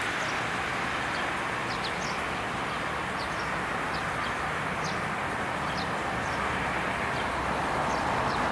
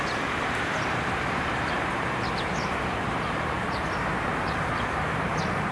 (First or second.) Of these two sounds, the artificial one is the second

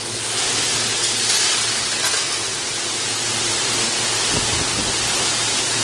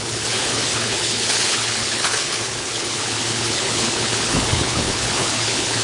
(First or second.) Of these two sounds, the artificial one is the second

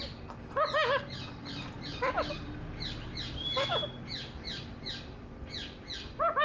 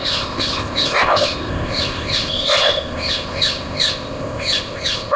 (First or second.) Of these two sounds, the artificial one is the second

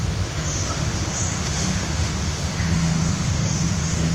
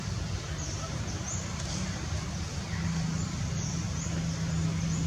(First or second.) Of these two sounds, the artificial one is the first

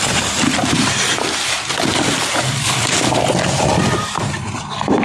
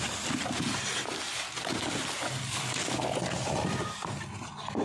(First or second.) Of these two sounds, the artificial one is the first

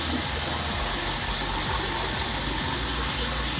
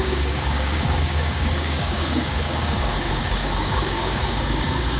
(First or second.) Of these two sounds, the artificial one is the second